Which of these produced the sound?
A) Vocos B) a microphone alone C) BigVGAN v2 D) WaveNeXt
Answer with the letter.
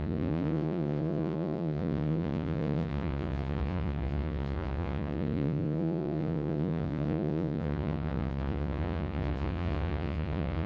A